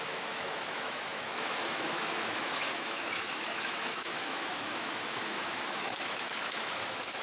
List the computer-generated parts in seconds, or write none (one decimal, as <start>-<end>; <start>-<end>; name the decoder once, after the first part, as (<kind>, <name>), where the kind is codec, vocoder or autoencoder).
0.0-7.2 (autoencoder, DAC-VAE)